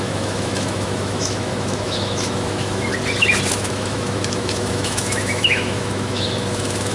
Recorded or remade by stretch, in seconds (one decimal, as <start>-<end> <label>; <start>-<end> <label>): 0.0-2.9 remade; 2.9-3.5 recorded; 3.5-6.9 remade

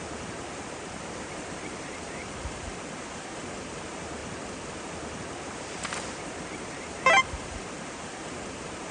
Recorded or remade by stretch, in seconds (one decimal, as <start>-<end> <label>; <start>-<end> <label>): 0.0-4.2 remade; 4.2-5.4 recorded; 5.4-8.9 remade

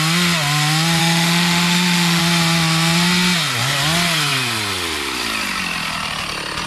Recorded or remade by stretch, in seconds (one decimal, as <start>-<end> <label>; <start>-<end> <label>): 0.0-1.0 recorded; 1.0-2.2 remade; 2.2-6.7 recorded

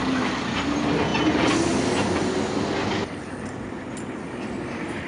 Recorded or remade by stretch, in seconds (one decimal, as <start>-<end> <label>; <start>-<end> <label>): 0.0-5.1 recorded

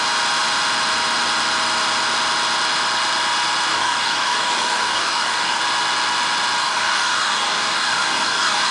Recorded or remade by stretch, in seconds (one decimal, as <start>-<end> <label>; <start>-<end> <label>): 0.0-3.7 recorded; 3.7-5.6 remade; 5.6-6.6 recorded; 6.6-8.7 remade

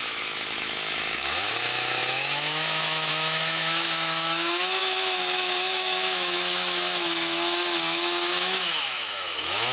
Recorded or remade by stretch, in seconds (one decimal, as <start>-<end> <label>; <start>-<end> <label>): 0.0-9.7 remade

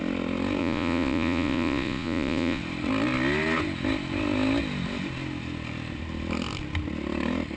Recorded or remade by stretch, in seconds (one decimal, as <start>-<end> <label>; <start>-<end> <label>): 0.0-0.6 recorded; 0.6-2.6 remade; 2.6-7.6 recorded